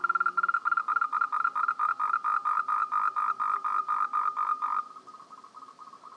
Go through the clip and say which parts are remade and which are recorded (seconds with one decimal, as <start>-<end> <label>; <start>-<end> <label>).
0.0-6.2 recorded